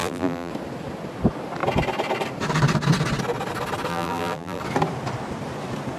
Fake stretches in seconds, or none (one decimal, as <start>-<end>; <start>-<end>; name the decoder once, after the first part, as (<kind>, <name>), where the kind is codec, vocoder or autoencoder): 0.0-0.5 (vocoder, BigVGAN v2); 3.9-4.6